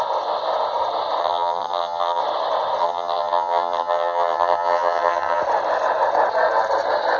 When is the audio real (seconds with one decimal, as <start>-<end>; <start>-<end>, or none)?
0.0-1.2; 2.2-2.8; 5.4-7.2